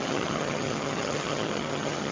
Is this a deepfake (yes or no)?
yes